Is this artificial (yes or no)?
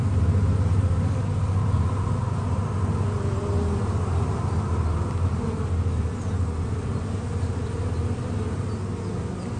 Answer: no